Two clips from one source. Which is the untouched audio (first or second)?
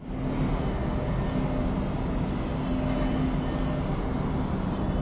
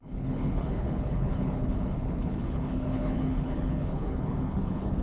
first